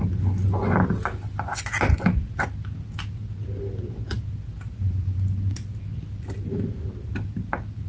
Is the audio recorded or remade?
recorded